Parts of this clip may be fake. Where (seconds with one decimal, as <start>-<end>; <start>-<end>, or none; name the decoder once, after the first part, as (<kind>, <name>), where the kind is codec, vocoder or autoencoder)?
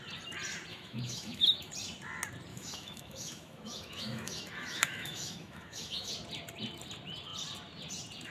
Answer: 0.7-1.7 (autoencoder, DAC-VAE); 2.5-6.1